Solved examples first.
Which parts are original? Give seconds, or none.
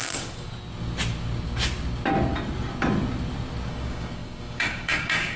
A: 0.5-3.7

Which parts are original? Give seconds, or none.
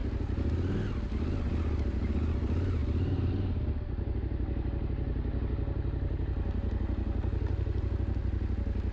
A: 0.0-8.9